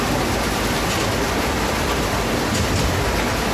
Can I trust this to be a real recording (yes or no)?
yes